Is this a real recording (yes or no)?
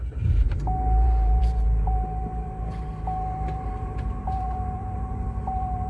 no